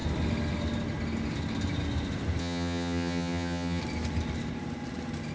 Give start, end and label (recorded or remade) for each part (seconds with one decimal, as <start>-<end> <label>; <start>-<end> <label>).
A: 0.0-2.4 recorded; 2.4-3.8 remade; 3.8-5.3 recorded